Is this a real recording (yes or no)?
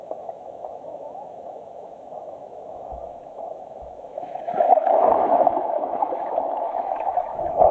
no